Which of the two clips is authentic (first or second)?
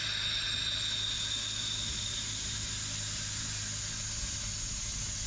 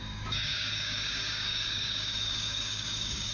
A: first